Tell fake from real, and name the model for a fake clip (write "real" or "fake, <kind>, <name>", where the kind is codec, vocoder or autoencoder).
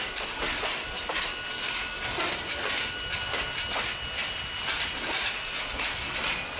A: real